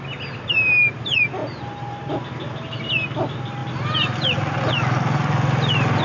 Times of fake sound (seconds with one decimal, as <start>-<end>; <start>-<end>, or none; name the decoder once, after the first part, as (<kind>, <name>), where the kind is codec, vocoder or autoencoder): none